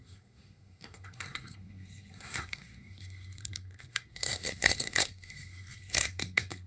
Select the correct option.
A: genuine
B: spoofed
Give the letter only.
B